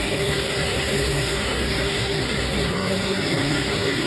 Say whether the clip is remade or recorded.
remade